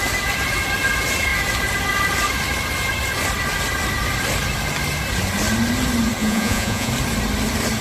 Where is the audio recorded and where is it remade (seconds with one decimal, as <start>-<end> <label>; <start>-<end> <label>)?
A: 0.0-6.2 recorded; 6.2-6.9 remade; 6.9-7.8 recorded